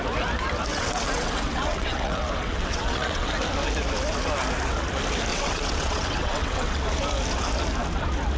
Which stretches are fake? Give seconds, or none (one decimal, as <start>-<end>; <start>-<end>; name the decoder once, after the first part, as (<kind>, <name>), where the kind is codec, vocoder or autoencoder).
0.7-3.3 (vocoder, WaveNeXt); 5.3-6.8